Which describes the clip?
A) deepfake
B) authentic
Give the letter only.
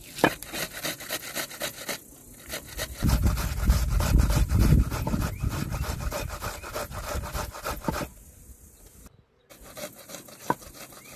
B